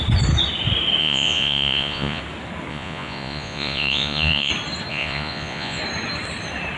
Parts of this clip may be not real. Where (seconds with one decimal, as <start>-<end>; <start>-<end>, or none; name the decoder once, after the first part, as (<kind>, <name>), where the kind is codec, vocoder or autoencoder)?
1.0-2.2 (vocoder, Vocos); 2.7-4.5; 4.9-5.8